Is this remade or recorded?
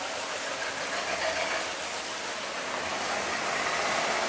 recorded